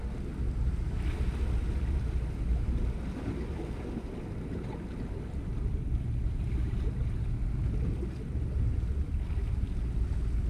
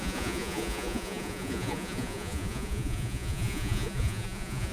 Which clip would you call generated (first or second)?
second